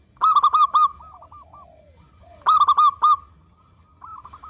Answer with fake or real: real